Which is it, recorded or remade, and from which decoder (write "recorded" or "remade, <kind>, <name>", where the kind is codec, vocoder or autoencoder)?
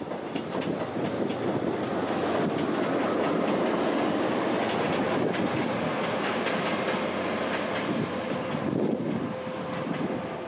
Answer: recorded